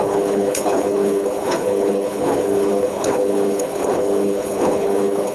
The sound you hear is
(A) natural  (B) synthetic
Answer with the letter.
B